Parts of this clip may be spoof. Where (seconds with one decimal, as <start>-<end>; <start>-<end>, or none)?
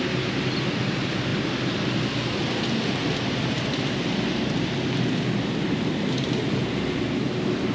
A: none